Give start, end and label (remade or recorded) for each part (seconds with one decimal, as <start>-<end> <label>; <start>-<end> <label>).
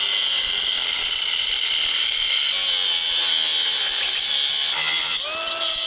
0.0-5.9 recorded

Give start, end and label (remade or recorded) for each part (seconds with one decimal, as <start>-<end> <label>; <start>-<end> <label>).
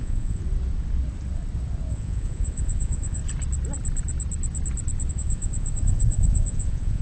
0.0-0.4 remade; 0.4-1.9 recorded; 1.9-3.2 remade; 3.2-5.1 recorded; 5.1-7.0 remade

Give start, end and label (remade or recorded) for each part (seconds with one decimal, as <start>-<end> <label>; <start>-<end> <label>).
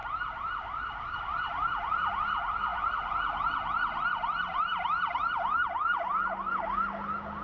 0.0-7.4 recorded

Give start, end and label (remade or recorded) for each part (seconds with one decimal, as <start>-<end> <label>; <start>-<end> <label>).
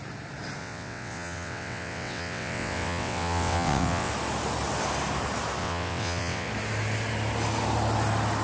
0.0-0.6 recorded; 0.6-4.1 remade; 4.1-5.6 recorded; 5.6-6.5 remade; 6.5-8.4 recorded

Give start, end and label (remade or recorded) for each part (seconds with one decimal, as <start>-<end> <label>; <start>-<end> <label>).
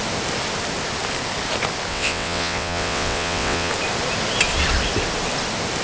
0.0-1.9 recorded; 1.9-3.7 remade; 3.7-5.8 recorded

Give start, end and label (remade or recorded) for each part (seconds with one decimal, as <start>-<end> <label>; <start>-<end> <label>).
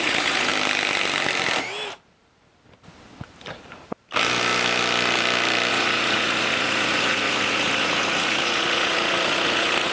0.0-0.5 remade; 0.5-5.7 recorded; 5.7-9.9 remade